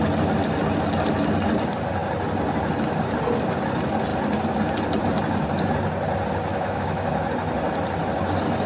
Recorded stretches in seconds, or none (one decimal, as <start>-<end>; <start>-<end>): 0.0-6.5; 7.1-8.7